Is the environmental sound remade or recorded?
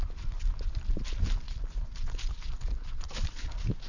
recorded